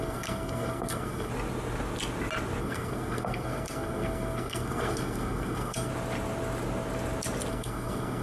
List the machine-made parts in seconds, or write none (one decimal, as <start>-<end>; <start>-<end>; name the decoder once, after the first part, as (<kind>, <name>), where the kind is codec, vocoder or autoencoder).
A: 0.0-1.3 (codec, SNAC); 2.6-5.9; 7.5-8.2